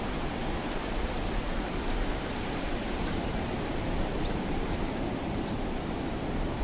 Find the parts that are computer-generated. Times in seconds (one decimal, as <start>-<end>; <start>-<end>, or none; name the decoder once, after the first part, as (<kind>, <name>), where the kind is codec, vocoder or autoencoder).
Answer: 0.0-0.4 (vocoder, BigVGAN v2); 2.4-6.6